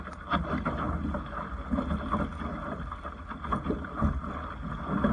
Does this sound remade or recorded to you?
recorded